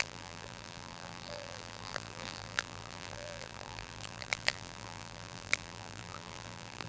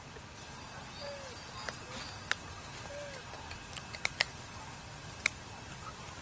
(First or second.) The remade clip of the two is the first